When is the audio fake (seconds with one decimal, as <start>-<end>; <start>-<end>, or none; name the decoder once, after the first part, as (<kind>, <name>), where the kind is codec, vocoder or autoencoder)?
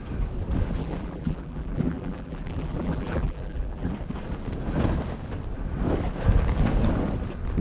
0.8-3.9 (vocoder, BigVGAN v2)